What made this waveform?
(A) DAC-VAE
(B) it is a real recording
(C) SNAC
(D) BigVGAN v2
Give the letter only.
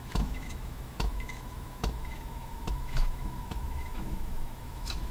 A